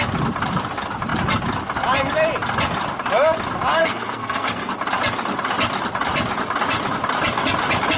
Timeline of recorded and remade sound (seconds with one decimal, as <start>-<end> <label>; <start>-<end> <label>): 0.0-3.8 recorded; 3.8-4.7 remade; 4.7-8.0 recorded